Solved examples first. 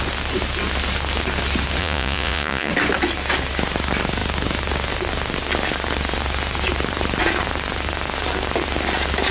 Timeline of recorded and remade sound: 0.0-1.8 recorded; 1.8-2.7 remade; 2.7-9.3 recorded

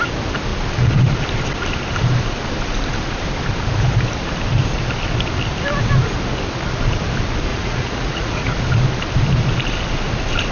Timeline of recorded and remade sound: 0.0-7.5 recorded; 7.5-8.6 remade; 8.6-10.5 recorded